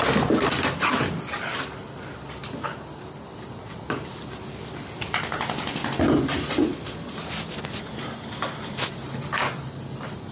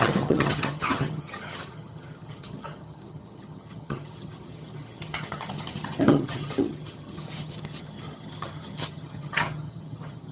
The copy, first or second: second